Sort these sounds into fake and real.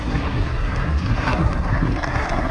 fake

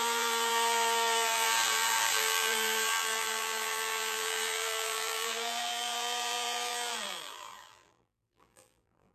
fake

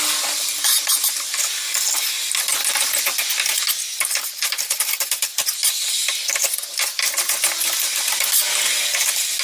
real